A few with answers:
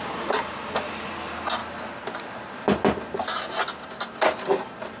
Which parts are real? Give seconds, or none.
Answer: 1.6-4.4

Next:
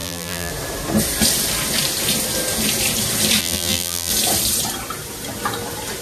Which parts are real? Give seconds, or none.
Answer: 0.5-3.4; 4.1-6.0

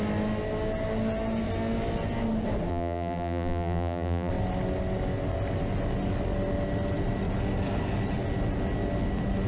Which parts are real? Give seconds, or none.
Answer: 0.0-2.7; 4.3-9.5

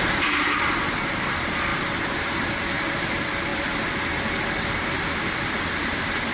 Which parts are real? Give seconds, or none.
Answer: 0.0-6.3